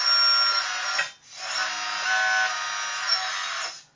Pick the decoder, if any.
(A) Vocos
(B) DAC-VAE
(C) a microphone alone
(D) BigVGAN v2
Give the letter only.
C